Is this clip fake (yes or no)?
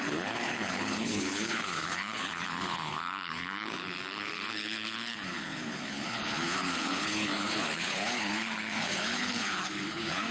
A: yes